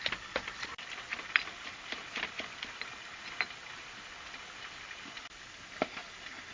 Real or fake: real